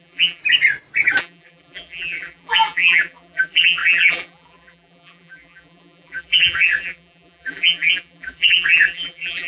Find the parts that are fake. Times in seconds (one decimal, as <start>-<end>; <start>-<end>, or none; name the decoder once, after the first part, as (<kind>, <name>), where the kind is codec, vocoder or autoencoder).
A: 0.0-0.4 (vocoder, BigVGAN v2); 1.2-9.5